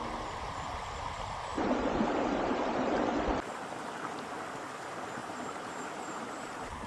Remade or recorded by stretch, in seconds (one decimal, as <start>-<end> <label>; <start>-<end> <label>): 0.0-1.5 recorded; 1.5-3.0 remade; 3.0-5.2 recorded; 5.2-6.9 remade